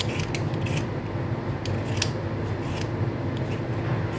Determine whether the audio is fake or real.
real